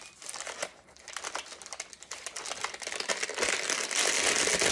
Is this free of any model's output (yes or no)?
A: yes